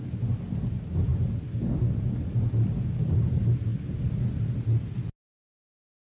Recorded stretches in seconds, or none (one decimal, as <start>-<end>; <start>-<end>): 0.0-6.2